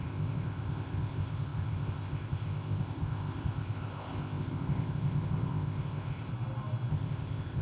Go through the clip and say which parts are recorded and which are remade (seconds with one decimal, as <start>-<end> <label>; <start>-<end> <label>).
0.0-6.3 remade; 6.3-6.9 recorded; 6.9-7.6 remade

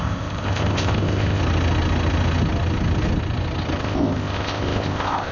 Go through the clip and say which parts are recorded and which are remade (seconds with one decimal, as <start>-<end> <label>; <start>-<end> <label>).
0.0-1.4 remade; 1.4-3.8 recorded; 3.8-5.3 remade

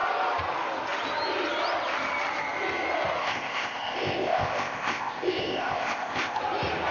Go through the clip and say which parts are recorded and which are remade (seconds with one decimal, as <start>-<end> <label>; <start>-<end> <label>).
0.0-3.2 recorded; 3.2-6.4 remade; 6.4-6.9 recorded

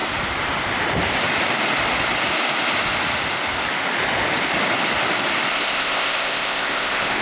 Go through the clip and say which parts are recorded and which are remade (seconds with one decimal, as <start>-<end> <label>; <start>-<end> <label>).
0.0-5.5 recorded; 5.5-7.2 remade

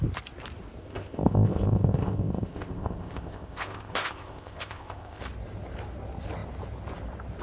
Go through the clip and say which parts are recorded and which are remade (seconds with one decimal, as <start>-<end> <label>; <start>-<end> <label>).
0.0-0.8 recorded; 0.8-5.2 remade; 5.2-7.4 recorded

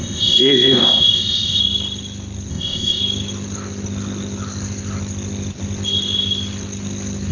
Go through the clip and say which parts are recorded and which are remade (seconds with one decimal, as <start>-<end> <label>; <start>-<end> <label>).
0.0-1.6 remade; 1.6-2.5 recorded; 2.5-3.0 remade; 3.0-7.3 recorded

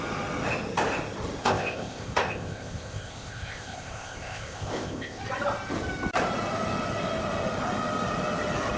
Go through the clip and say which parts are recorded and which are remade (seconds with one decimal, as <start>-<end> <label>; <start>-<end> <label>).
0.0-1.4 recorded; 1.4-5.2 remade; 5.2-8.8 recorded